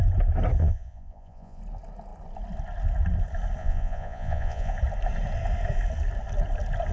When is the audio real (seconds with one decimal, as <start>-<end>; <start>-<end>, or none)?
0.0-0.6; 1.6-3.6; 4.7-6.9